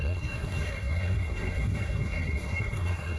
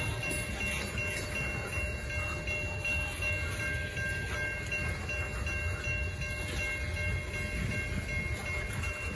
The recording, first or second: second